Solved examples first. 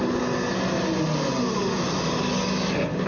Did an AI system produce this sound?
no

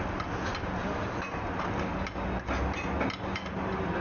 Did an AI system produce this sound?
no